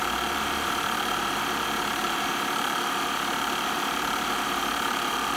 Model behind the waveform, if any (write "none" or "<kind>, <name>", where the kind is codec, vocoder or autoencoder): vocoder, BigVGAN v2